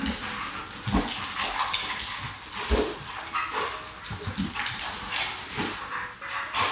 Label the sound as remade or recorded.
recorded